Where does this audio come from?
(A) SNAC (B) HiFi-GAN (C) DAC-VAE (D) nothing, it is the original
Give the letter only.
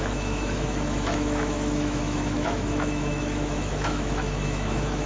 C